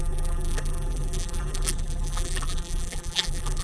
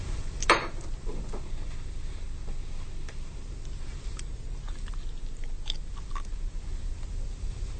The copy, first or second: first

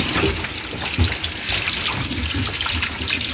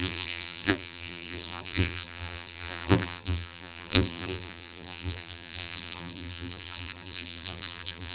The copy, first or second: second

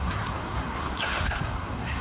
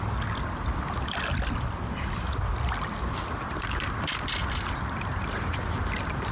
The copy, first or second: first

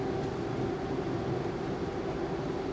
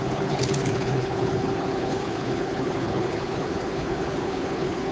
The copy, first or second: second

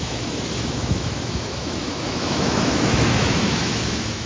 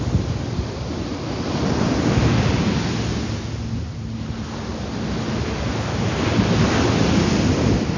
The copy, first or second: first